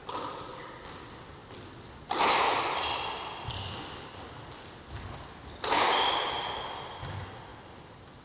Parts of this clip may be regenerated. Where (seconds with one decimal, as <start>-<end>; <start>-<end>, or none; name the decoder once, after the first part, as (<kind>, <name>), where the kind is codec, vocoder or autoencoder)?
none